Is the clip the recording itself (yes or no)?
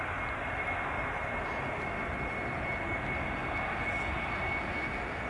yes